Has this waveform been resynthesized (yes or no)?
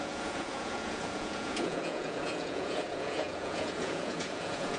yes